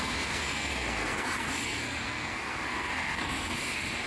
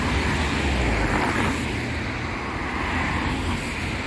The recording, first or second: second